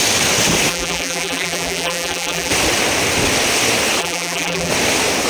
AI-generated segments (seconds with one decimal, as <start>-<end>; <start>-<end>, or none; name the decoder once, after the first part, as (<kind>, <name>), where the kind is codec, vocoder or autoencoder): 0.7-2.5 (vocoder, BigVGAN v2); 4.0-4.7